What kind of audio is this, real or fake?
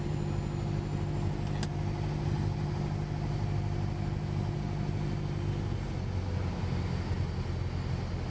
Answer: real